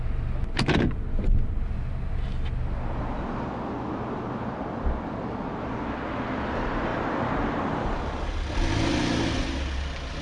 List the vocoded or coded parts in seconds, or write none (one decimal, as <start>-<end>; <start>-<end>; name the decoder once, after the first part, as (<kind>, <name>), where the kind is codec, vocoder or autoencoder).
none